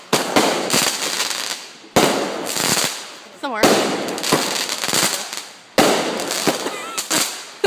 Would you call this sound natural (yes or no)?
yes